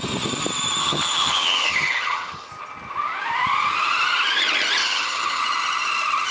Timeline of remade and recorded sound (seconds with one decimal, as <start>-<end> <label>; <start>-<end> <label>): 0.0-0.8 recorded; 0.8-2.5 remade; 2.5-4.8 recorded; 4.8-5.4 remade; 5.4-6.3 recorded